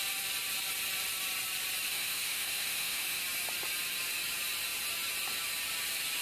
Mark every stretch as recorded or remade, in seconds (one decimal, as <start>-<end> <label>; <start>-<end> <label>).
0.0-1.9 recorded; 1.9-3.2 remade; 3.2-6.2 recorded